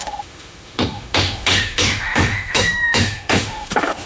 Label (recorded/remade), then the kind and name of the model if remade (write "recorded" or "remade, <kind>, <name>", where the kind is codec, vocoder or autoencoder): remade, autoencoder, DAC-VAE